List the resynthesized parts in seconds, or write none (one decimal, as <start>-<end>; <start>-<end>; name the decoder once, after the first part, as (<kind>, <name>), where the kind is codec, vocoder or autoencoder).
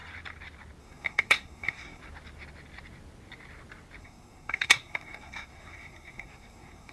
0.8-2.0 (codec, SNAC); 4.0-6.9